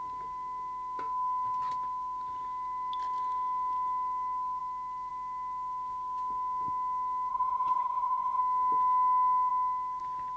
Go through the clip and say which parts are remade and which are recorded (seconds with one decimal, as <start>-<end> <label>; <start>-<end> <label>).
0.0-7.3 recorded; 7.3-8.4 remade; 8.4-10.4 recorded